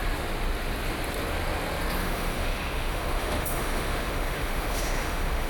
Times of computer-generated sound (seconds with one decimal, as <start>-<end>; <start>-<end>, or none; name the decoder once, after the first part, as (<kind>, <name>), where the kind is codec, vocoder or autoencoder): 2.0-5.5 (autoencoder, DAC-VAE)